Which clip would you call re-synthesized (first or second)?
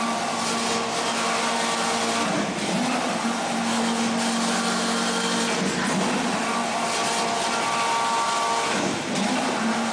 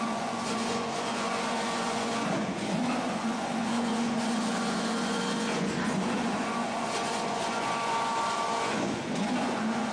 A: second